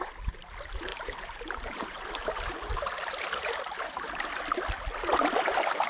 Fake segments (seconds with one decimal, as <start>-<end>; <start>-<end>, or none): 0.9-4.4

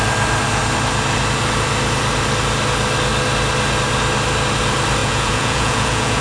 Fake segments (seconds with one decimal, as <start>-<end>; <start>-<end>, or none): 5.0-6.2

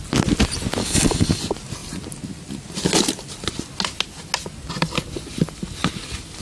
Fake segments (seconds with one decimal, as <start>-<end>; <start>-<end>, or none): 0.8-1.4

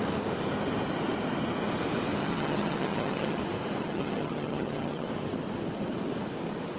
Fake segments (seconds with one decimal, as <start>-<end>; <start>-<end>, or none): 2.2-3.4; 3.8-5.1